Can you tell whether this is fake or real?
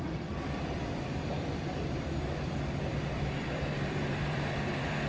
fake